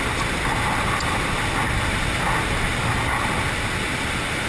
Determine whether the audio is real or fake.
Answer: real